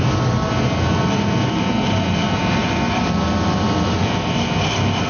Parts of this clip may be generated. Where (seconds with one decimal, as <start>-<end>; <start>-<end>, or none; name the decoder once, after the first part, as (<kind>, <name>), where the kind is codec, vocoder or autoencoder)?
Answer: 2.4-5.1 (vocoder, BigVGAN v2)